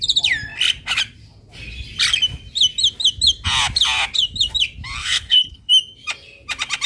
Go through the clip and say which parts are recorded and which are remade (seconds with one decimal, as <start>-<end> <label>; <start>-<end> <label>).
0.0-5.0 recorded; 5.0-5.7 remade; 5.7-6.9 recorded